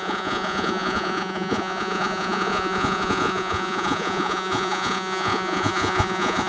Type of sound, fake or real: fake